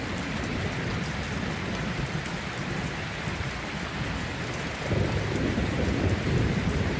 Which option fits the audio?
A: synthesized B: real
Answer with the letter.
B